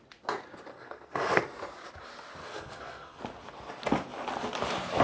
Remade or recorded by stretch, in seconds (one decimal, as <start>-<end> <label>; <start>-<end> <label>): 0.0-0.7 recorded; 0.7-1.4 remade; 1.4-2.4 recorded; 2.4-3.2 remade; 3.2-5.0 recorded